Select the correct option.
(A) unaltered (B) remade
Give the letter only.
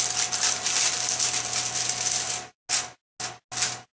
A